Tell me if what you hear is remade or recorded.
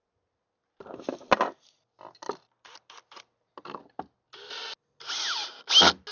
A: recorded